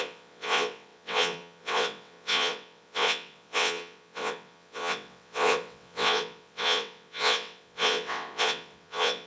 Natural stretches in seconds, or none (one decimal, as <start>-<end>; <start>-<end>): none